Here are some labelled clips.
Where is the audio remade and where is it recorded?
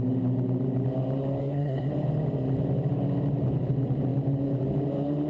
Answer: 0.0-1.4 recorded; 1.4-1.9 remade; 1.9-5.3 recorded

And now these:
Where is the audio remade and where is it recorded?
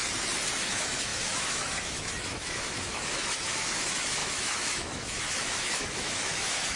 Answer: 0.0-0.7 recorded; 0.7-6.8 remade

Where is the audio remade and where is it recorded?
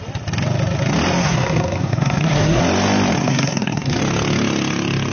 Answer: 0.0-1.2 recorded; 1.2-2.6 remade; 2.6-3.2 recorded; 3.2-4.0 remade; 4.0-5.1 recorded